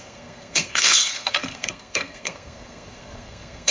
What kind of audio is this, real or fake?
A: fake